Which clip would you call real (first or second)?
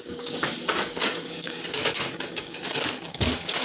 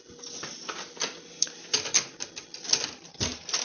second